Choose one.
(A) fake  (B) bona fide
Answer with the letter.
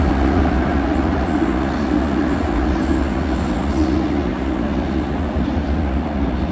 A